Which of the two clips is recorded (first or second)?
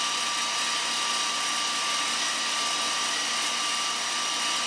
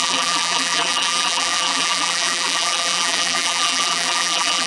first